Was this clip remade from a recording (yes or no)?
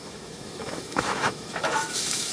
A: yes